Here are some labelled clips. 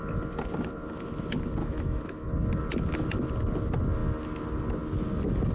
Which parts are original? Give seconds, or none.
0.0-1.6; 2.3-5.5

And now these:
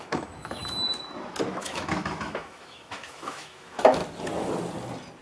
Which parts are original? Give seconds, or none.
0.6-1.5; 4.0-5.2

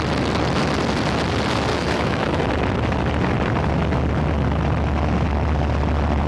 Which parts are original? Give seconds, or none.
0.0-1.7; 2.4-6.3

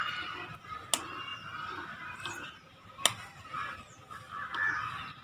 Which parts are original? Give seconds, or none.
0.0-5.2

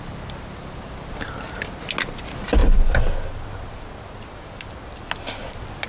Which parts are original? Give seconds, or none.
0.0-5.9

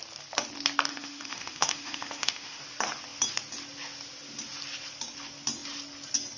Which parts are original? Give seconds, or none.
0.0-0.9; 2.6-6.4

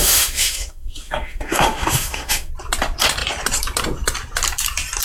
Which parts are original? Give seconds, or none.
2.5-5.0

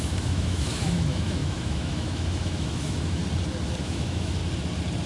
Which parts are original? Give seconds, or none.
3.2-3.8; 4.4-5.1